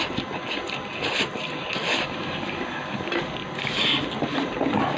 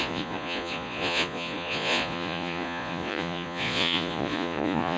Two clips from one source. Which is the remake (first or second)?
second